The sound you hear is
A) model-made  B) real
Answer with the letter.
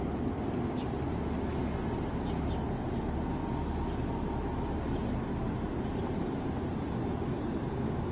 B